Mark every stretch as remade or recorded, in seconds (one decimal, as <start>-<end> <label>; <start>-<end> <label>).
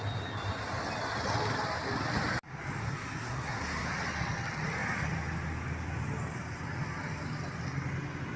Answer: 0.0-2.8 recorded; 2.8-3.9 remade; 3.9-8.4 recorded